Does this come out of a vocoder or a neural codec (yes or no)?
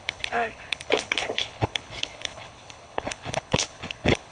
yes